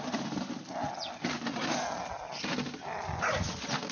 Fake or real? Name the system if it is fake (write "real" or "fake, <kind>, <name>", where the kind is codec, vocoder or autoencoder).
real